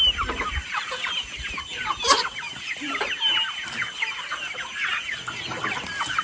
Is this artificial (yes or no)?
no